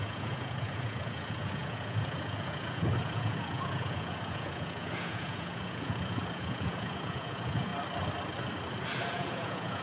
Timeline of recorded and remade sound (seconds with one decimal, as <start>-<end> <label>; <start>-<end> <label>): 0.0-7.7 remade; 7.7-9.0 recorded; 9.0-9.8 remade